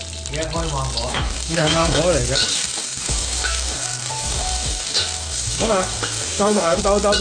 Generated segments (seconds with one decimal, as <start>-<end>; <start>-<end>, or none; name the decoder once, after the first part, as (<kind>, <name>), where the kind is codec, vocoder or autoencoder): 1.1-2.0 (codec, DAC); 2.5-6.8